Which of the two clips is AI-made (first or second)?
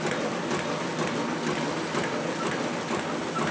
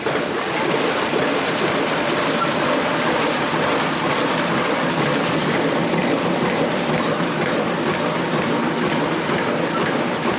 second